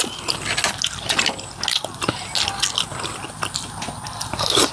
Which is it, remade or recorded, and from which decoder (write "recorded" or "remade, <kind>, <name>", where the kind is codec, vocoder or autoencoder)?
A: recorded